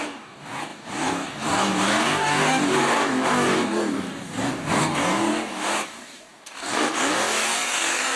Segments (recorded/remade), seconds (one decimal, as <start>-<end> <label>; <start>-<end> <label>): 0.0-8.2 remade